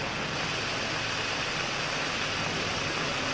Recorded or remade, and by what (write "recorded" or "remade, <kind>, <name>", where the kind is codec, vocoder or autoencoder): recorded